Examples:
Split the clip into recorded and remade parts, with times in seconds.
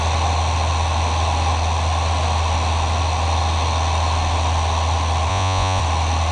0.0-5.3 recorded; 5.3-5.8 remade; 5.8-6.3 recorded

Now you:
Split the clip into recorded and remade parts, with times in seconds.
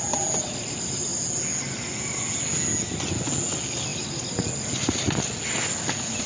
0.0-6.3 recorded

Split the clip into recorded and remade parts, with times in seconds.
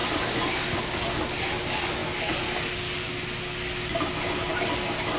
0.0-5.2 recorded